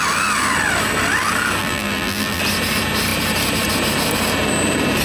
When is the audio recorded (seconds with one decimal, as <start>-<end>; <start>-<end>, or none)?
0.0-1.6; 2.4-5.0